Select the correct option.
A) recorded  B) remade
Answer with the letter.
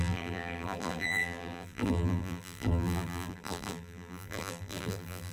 B